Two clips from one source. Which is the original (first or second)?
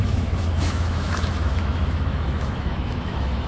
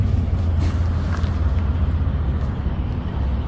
second